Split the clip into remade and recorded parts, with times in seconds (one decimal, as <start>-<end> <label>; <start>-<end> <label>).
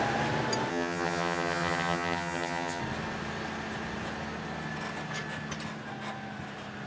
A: 0.0-0.7 recorded; 0.7-2.8 remade; 2.8-6.9 recorded